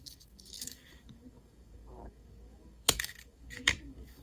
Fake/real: fake